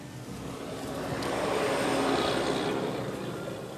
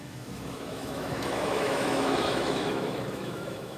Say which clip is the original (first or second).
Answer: first